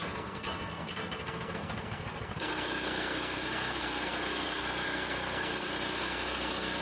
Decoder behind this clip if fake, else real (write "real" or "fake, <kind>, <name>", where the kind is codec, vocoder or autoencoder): fake, codec, SNAC